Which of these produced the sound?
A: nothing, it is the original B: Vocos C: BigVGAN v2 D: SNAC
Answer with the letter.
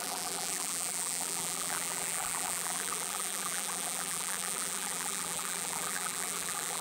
C